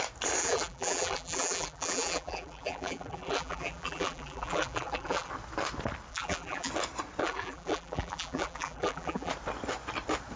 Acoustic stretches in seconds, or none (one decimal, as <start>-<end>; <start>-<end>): 0.0-0.4; 5.3-6.1; 6.7-7.2; 9.3-10.4